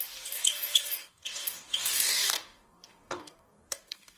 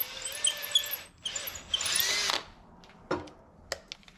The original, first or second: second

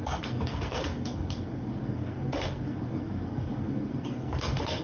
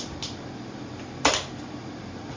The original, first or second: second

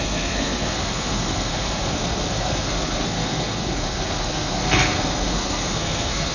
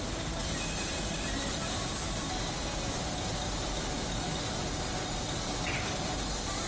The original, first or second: second